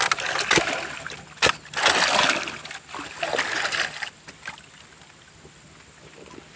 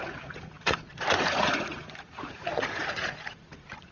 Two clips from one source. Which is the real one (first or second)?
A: first